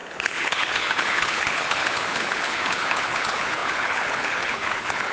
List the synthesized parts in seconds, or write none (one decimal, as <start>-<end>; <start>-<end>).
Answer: 0.0-5.1